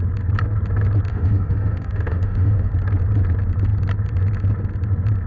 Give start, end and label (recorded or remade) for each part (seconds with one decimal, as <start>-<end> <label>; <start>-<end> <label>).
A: 0.0-1.1 recorded; 1.1-2.7 remade; 2.7-5.3 recorded